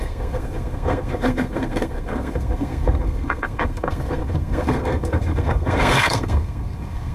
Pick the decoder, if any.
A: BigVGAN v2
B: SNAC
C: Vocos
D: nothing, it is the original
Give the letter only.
B